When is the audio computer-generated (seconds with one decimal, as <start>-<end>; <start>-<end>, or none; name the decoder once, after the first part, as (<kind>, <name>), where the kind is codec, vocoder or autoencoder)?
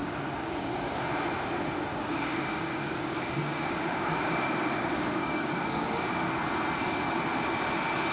0.0-1.0 (codec, DAC); 1.9-6.3